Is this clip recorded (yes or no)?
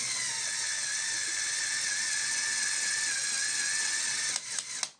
yes